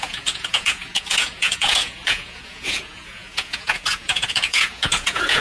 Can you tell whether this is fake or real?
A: fake